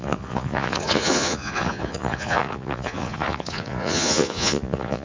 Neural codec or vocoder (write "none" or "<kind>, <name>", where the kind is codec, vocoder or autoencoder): vocoder, Vocos